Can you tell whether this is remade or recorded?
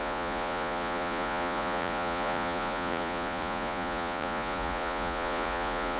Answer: remade